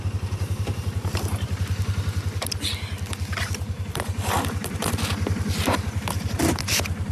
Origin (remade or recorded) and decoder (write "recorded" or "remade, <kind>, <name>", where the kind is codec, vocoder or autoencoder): remade, vocoder, BigVGAN v2